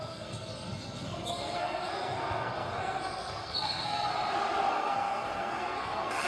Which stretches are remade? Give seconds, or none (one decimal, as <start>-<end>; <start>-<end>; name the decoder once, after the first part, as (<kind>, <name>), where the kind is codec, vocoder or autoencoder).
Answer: 0.0-4.1 (codec, SNAC); 4.7-6.3